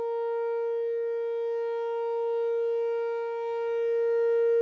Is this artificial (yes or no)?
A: no